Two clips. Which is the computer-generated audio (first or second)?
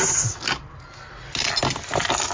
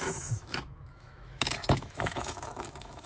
second